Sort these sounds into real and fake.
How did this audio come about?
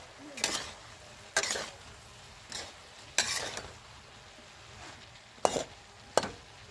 real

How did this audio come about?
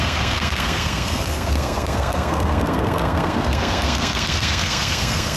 fake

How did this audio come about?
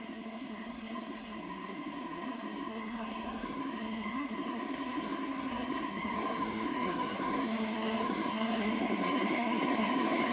fake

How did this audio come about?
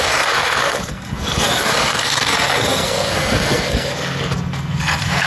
fake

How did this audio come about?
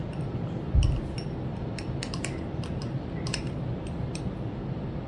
real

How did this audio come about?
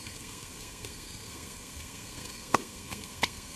fake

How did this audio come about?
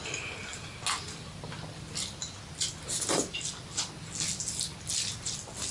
real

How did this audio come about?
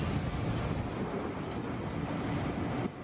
real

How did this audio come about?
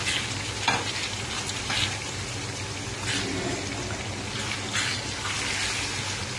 real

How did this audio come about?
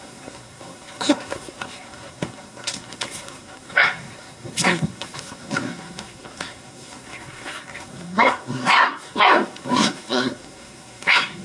fake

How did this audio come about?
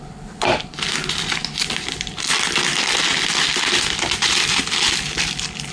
real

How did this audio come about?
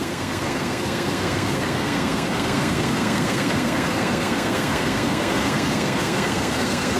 fake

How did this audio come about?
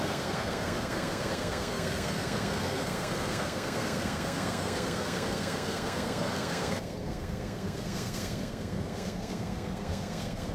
fake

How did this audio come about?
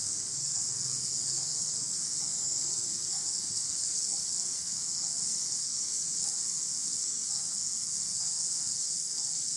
fake